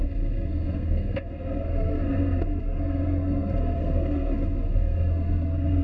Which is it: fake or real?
fake